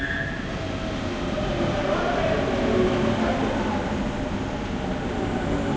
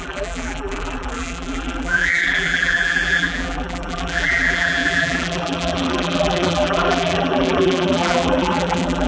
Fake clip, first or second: second